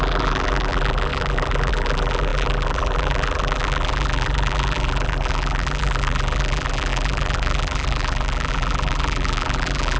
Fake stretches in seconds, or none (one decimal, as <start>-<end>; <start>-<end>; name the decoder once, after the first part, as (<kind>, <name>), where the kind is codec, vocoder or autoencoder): 0.0-10.0 (vocoder, BigVGAN v2)